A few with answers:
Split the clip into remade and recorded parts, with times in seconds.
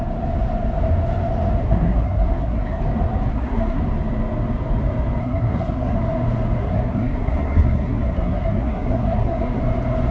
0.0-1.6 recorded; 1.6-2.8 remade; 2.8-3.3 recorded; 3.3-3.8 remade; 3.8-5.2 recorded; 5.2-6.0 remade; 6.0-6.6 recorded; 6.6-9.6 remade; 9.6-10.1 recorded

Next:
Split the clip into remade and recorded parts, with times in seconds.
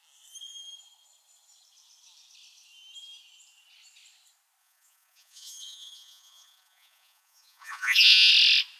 0.0-4.6 recorded; 4.6-8.3 remade; 8.3-8.8 recorded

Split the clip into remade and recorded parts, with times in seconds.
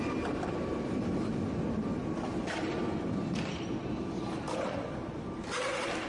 0.0-6.1 recorded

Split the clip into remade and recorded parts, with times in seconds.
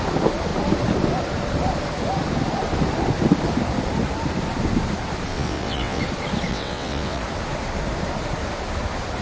0.0-5.3 recorded; 5.3-6.0 remade; 6.0-6.5 recorded; 6.5-7.2 remade; 7.2-9.2 recorded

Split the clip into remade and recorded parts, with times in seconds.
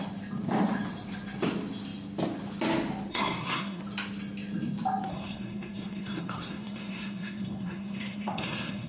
0.0-3.1 recorded; 3.1-3.8 remade; 3.8-5.1 recorded; 5.1-8.9 remade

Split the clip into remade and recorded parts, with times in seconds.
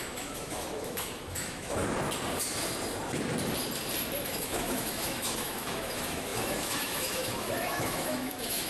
0.0-1.8 remade; 1.8-4.2 recorded; 4.2-8.7 remade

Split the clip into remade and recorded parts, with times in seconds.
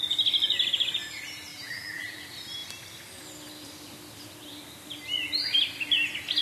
0.0-1.5 recorded; 1.5-2.2 remade; 2.2-6.4 recorded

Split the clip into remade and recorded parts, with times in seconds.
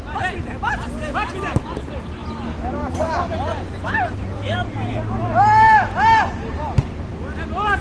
0.0-2.2 recorded; 2.2-6.6 remade; 6.6-7.8 recorded